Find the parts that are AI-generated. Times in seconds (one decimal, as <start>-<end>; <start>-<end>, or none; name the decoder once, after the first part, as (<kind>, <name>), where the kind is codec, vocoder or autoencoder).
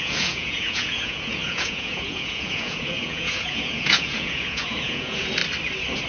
0.0-5.4 (vocoder, Vocos)